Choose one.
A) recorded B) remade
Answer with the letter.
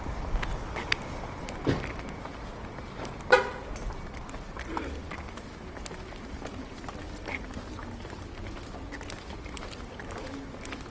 A